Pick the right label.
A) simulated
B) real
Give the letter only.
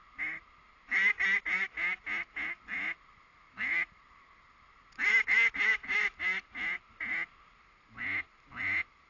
B